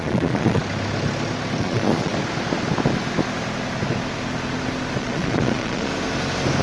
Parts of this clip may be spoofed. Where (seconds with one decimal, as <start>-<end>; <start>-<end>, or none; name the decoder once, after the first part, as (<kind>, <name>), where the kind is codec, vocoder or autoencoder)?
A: 0.0-0.6 (vocoder, Vocos); 1.6-2.1; 5.0-5.9